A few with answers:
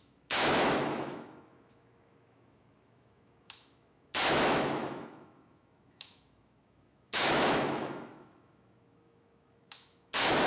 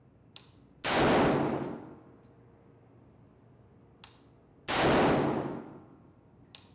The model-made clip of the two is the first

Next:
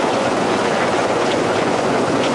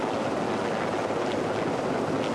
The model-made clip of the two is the first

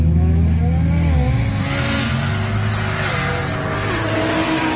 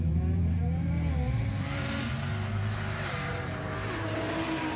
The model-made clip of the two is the second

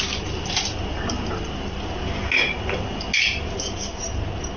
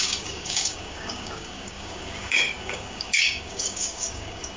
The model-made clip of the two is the second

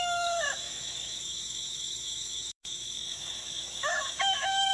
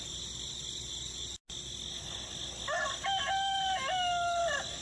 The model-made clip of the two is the first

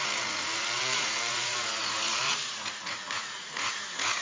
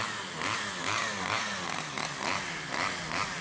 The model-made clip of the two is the first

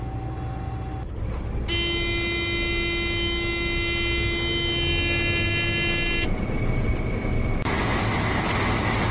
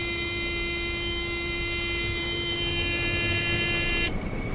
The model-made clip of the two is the second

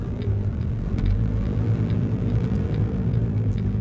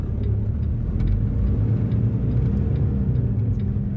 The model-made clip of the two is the first